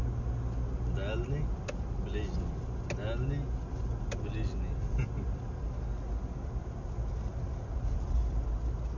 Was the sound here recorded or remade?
recorded